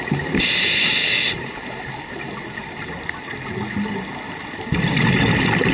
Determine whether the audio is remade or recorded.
recorded